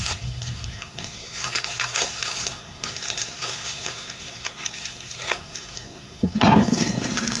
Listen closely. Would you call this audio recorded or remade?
remade